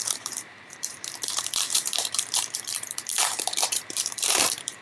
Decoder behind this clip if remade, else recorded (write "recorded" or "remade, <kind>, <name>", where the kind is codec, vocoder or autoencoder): remade, vocoder, BigVGAN v2